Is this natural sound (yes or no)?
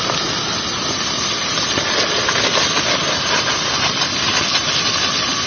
yes